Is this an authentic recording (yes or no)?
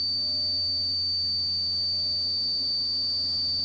yes